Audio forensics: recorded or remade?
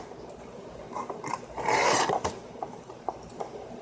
remade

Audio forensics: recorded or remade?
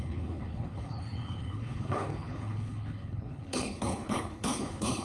remade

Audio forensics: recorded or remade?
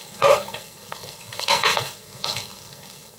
remade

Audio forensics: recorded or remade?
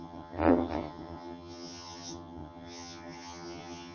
remade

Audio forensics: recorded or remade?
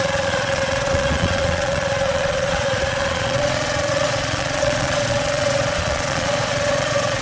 remade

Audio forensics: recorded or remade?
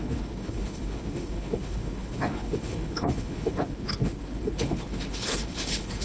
remade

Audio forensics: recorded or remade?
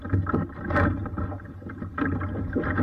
recorded